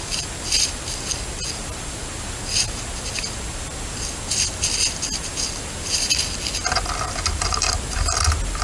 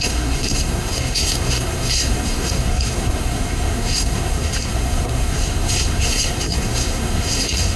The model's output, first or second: second